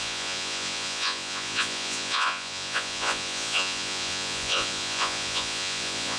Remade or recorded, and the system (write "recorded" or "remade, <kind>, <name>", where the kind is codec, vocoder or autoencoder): remade, vocoder, Vocos